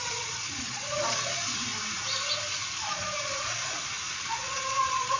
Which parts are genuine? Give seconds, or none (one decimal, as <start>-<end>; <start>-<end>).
1.7-2.9; 3.6-4.1